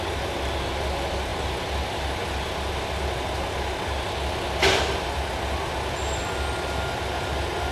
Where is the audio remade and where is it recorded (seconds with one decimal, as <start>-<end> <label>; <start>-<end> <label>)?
0.0-7.7 recorded